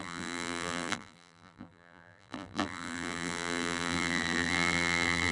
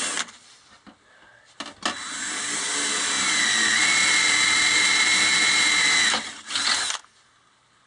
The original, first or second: second